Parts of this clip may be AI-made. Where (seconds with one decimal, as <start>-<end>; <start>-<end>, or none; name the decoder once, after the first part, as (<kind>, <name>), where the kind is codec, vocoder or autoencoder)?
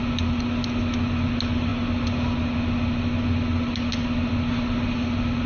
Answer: none